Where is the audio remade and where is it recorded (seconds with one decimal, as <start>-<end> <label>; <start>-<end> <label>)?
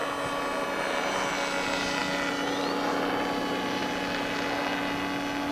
0.0-5.5 recorded